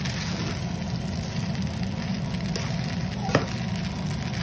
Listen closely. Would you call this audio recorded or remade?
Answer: recorded